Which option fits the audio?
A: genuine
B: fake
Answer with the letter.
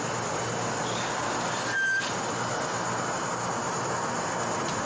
A